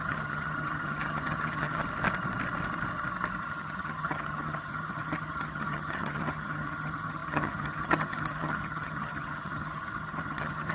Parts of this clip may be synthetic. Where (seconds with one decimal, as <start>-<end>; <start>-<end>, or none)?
0.0-1.8; 3.4-10.7